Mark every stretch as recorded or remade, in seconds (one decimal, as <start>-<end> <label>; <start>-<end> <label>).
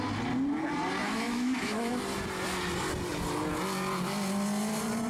0.0-1.0 recorded; 1.0-1.9 remade; 1.9-5.1 recorded